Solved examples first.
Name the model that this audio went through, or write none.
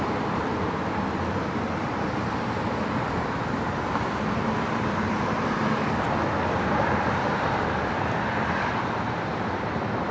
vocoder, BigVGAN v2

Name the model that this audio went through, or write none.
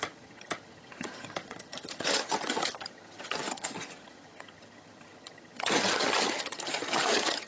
vocoder, HiFi-GAN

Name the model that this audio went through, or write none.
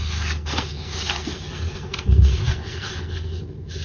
codec, SNAC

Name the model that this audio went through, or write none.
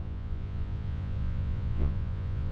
vocoder, Vocos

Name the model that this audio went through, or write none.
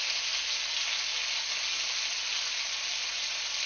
none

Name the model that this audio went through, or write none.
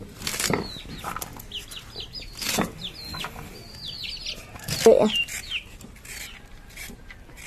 none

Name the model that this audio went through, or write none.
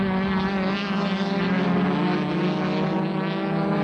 none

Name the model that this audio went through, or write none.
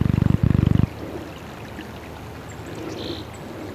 none